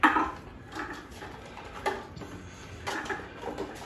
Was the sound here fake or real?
real